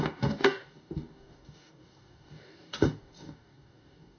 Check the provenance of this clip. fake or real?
fake